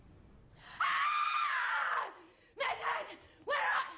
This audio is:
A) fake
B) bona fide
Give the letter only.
B